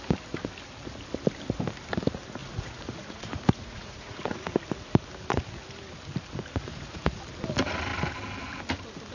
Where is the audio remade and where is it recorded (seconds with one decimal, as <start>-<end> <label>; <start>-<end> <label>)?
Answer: 0.0-2.4 recorded; 2.4-4.5 remade; 4.5-6.6 recorded; 6.6-7.2 remade; 7.2-9.1 recorded